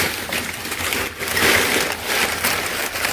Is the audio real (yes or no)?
yes